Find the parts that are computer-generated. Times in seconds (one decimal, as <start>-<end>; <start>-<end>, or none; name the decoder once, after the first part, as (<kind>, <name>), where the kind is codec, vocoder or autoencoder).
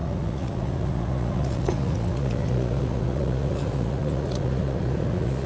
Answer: 0.0-5.5 (vocoder, Vocos)